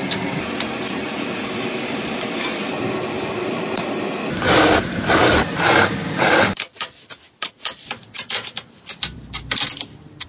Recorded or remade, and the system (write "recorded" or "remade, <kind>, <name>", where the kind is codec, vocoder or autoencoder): remade, vocoder, BigVGAN v2